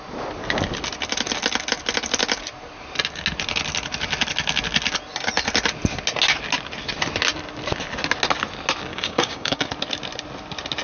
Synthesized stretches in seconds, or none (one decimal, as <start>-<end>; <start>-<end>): 8.9-9.7